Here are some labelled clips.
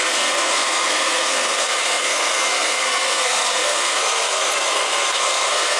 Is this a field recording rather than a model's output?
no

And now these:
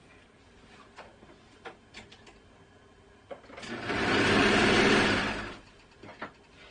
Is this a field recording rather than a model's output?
yes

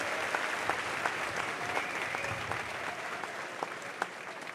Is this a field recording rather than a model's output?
yes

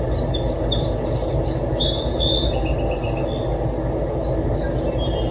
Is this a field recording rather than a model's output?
yes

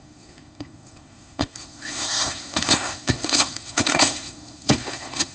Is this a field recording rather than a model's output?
no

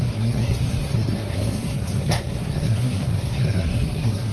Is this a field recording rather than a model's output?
no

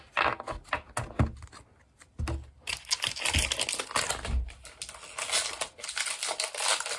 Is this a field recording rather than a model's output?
yes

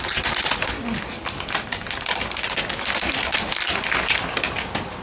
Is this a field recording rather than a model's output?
yes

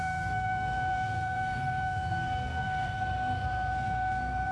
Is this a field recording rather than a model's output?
no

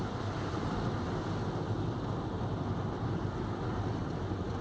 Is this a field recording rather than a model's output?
yes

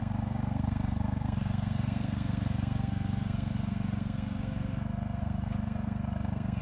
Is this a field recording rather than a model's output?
no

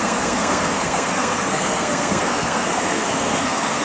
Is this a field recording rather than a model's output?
no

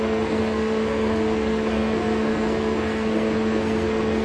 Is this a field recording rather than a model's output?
no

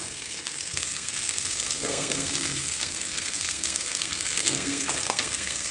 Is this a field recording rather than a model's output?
no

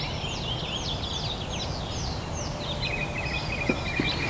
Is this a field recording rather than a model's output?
yes